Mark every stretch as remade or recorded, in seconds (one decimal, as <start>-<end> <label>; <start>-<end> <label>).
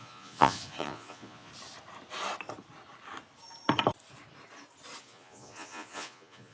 0.0-1.5 remade; 1.5-5.0 recorded; 5.0-6.5 remade